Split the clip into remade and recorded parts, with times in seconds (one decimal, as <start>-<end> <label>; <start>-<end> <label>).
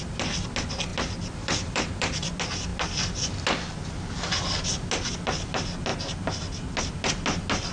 0.0-0.9 recorded; 0.9-2.3 remade; 2.3-7.7 recorded